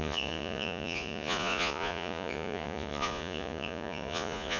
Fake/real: fake